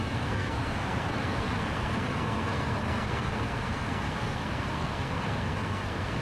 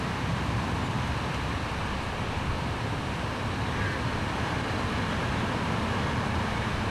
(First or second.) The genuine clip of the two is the second